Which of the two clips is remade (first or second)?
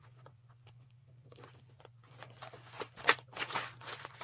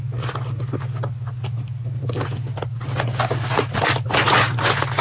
first